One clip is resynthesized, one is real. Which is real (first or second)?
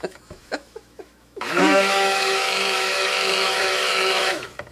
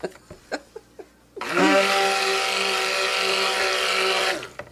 second